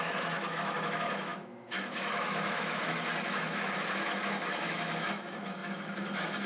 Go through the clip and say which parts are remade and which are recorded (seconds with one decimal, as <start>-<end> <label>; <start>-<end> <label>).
0.0-6.5 remade